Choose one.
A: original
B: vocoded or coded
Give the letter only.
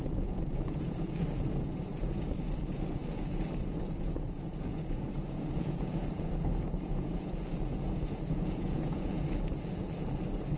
B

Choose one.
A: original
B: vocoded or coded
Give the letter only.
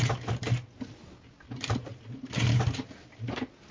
A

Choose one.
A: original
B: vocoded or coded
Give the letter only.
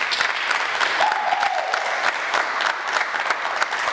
A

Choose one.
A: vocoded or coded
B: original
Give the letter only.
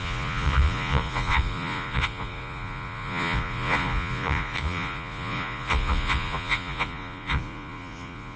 A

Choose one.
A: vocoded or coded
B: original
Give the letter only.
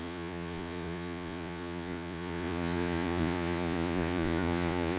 A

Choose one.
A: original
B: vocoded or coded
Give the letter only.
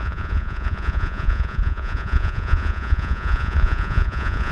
B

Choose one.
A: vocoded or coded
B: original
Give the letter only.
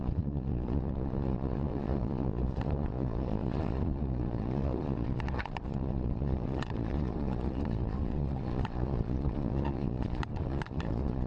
A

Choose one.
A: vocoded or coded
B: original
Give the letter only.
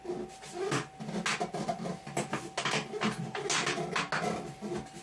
B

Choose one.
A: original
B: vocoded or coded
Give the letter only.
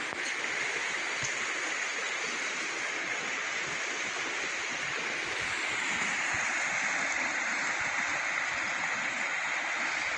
A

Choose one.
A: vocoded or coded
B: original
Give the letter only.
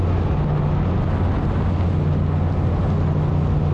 B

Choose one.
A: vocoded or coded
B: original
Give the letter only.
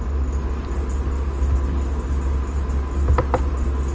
B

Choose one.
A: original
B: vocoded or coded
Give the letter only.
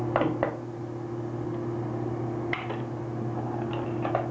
A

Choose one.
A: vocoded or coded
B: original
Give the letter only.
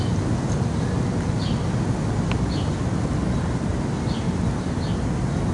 B